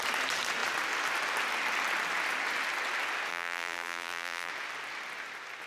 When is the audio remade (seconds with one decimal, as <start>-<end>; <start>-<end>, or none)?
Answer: 3.3-4.5